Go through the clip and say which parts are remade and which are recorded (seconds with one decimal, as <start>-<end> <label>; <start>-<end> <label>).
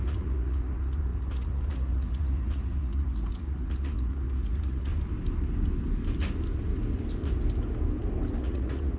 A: 0.0-4.9 remade; 4.9-8.4 recorded; 8.4-9.0 remade